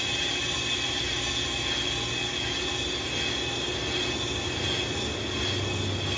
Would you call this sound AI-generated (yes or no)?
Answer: no